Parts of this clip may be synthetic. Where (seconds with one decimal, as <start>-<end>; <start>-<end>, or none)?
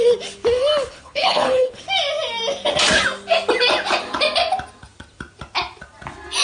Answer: 0.9-1.8